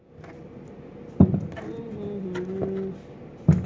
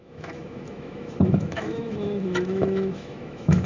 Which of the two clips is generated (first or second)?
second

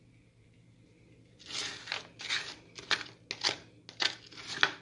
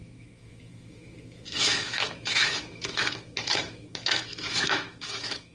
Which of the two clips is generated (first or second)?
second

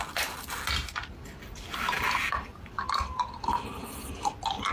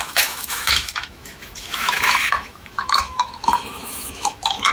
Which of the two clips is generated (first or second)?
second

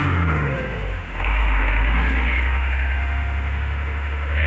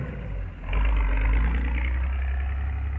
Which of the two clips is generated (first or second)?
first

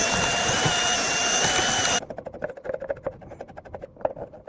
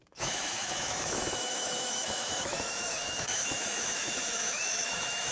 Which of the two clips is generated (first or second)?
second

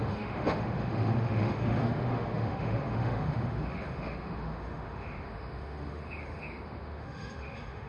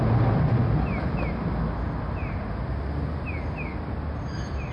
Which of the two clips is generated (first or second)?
first